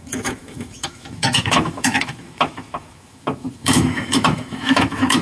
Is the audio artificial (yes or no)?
yes